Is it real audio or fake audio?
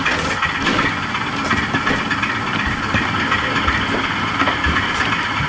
real